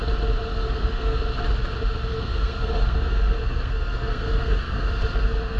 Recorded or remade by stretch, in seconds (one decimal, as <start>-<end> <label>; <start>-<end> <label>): 0.0-0.5 recorded; 0.5-1.2 remade; 1.2-2.1 recorded; 2.1-5.6 remade